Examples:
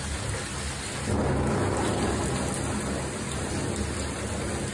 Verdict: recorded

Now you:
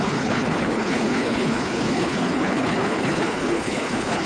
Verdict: remade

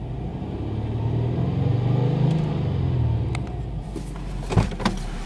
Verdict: recorded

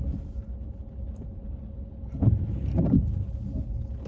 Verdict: recorded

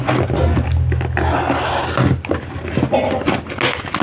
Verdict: recorded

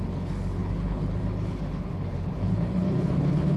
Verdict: remade